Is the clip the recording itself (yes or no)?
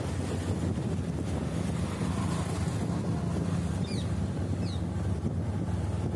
yes